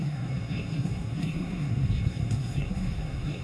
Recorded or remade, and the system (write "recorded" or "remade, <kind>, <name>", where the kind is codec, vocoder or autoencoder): remade, codec, SNAC